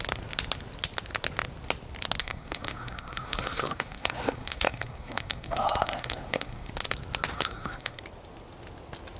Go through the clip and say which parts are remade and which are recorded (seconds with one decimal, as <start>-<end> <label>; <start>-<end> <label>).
0.0-2.2 recorded; 2.2-6.7 remade; 6.7-7.3 recorded; 7.3-8.0 remade; 8.0-9.2 recorded